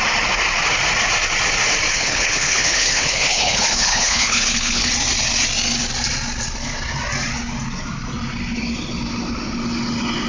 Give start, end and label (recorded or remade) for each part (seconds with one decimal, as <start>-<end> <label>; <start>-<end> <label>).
0.0-1.9 recorded; 1.9-4.9 remade; 4.9-10.3 recorded